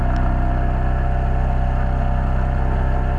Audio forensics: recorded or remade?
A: recorded